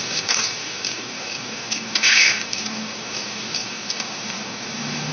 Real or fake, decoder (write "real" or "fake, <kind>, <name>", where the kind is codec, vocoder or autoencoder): fake, codec, DAC